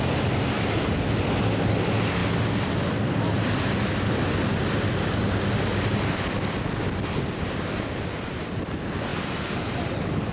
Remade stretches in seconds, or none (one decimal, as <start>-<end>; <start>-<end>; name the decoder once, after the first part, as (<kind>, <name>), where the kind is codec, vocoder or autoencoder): none